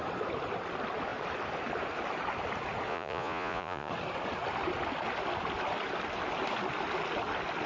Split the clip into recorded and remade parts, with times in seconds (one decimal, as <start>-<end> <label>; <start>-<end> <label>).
0.0-2.9 recorded; 2.9-3.9 remade; 3.9-7.7 recorded